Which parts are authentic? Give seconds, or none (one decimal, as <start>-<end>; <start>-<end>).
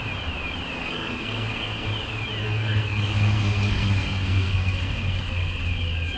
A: 0.0-0.8; 1.9-2.4; 5.6-6.2